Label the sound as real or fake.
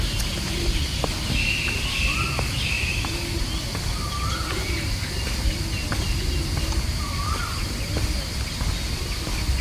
real